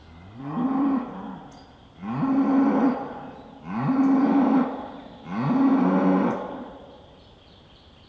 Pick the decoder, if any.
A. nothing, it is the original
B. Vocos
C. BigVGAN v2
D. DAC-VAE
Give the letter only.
A